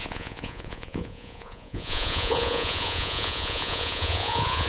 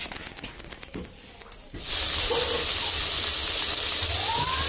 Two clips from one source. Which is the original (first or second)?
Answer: second